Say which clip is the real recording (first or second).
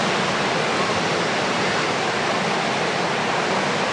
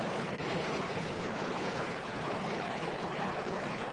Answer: first